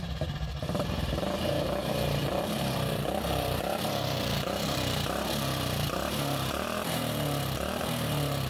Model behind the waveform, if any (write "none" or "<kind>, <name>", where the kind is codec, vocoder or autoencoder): vocoder, BigVGAN v2